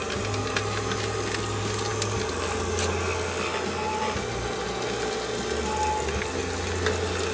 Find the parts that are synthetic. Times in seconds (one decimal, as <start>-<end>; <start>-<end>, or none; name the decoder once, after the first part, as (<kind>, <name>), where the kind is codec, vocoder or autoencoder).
none